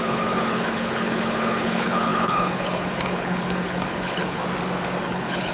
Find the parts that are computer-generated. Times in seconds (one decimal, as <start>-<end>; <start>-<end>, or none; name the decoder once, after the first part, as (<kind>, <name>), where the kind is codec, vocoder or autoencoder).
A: 0.0-4.4 (codec, HILCodec); 5.0-5.5